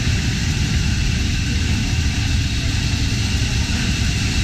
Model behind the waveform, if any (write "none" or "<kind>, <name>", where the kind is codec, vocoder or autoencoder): none